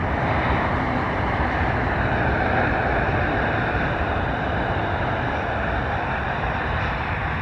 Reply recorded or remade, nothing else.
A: remade